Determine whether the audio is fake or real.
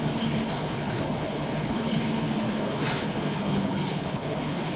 fake